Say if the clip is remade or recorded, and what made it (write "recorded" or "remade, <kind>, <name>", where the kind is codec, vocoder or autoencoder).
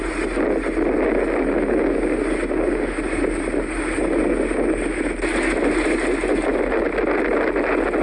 recorded